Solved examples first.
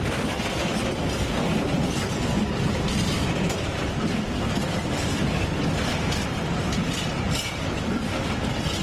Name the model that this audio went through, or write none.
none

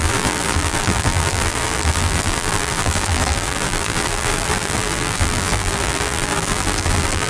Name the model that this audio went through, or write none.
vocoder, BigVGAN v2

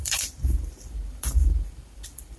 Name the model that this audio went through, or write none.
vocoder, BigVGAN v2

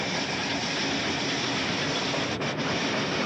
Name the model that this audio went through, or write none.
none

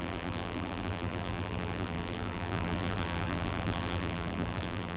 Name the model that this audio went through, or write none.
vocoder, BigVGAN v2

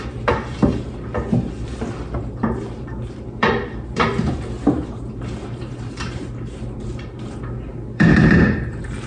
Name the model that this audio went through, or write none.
vocoder, BigVGAN v2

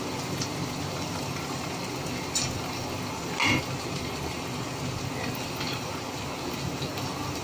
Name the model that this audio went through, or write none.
none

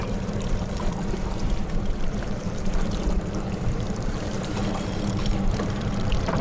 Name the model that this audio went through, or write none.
vocoder, BigVGAN v2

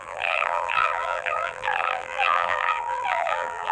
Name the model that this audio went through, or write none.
vocoder, BigVGAN v2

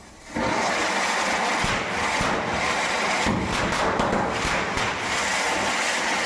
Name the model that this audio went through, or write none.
none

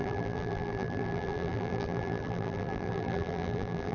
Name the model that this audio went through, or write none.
vocoder, BigVGAN v2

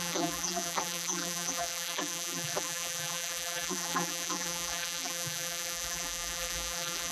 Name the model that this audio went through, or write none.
vocoder, BigVGAN v2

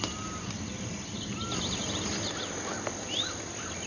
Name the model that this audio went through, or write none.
vocoder, BigVGAN v2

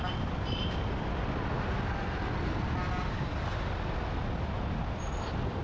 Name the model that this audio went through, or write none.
none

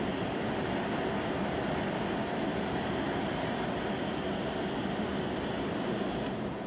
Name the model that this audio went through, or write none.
none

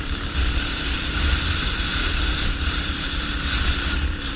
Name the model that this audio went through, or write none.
vocoder, BigVGAN v2